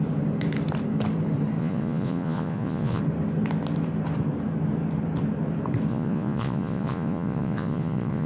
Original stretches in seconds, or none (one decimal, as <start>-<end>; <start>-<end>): 0.0-1.6; 3.0-5.9